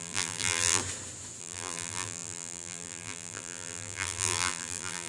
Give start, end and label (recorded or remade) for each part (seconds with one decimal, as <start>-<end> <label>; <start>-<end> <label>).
0.0-0.8 remade; 0.8-1.4 recorded; 1.4-5.1 remade

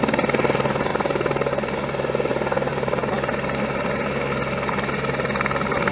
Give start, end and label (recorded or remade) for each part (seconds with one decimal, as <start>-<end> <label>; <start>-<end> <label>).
0.0-0.9 recorded; 0.9-1.5 remade; 1.5-2.3 recorded; 2.3-3.1 remade; 3.1-5.9 recorded

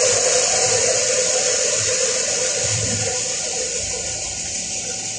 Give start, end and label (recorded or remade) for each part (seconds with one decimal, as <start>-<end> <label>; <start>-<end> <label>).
0.0-0.8 recorded; 0.8-3.9 remade; 3.9-5.2 recorded

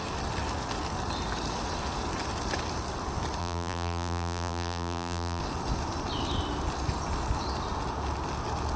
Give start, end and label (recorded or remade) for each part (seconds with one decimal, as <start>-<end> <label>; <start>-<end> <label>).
0.0-3.4 recorded; 3.4-5.4 remade; 5.4-8.8 recorded

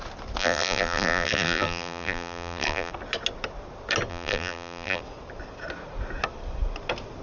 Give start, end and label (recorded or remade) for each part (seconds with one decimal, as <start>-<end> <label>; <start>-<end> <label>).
0.0-0.4 recorded; 0.4-2.9 remade; 2.9-4.1 recorded; 4.1-5.0 remade; 5.0-7.2 recorded

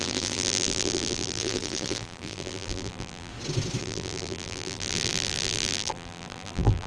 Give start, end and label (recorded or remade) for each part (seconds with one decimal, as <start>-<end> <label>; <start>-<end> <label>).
0.0-3.3 remade; 3.3-3.8 recorded; 3.8-6.9 remade